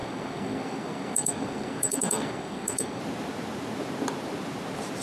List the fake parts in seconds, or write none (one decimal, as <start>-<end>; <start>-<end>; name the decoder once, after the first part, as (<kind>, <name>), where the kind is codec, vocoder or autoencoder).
0.0-3.0 (codec, SNAC)